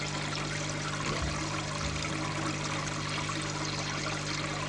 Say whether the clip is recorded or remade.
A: recorded